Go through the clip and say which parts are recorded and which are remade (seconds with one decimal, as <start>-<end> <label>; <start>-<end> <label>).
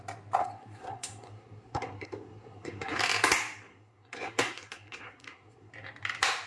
0.0-0.4 recorded; 0.4-3.0 remade; 3.0-3.7 recorded; 3.7-5.7 remade; 5.7-6.5 recorded